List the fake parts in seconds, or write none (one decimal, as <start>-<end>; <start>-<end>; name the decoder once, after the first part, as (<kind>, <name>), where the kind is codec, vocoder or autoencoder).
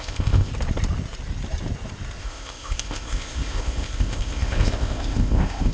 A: 0.0-0.5 (codec, ZipCodec); 2.2-5.7